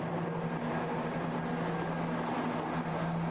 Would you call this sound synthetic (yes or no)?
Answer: no